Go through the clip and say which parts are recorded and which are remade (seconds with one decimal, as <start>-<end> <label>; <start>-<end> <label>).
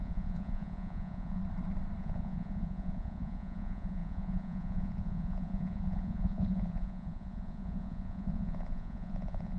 0.0-1.4 remade; 1.4-2.0 recorded; 2.0-9.6 remade